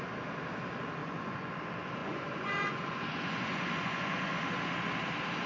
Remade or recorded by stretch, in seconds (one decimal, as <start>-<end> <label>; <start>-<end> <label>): 0.0-1.0 recorded; 1.0-1.6 remade; 1.6-2.0 recorded; 2.0-4.3 remade; 4.3-5.5 recorded